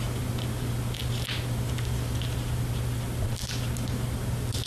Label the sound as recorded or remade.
recorded